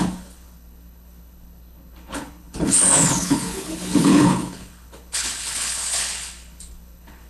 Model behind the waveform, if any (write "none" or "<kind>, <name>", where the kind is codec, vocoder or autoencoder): codec, HILCodec